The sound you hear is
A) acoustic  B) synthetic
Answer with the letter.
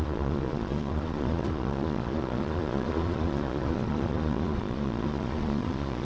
B